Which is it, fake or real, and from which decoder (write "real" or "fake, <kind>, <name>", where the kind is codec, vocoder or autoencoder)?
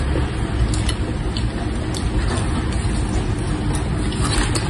real